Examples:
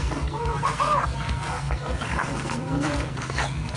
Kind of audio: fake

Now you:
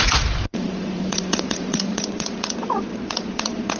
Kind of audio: fake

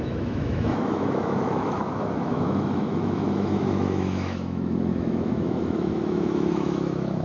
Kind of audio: fake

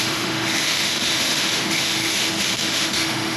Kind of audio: fake